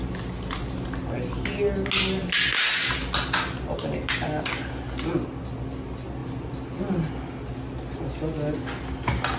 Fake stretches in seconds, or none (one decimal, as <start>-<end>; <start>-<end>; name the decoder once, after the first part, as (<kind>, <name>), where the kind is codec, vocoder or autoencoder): none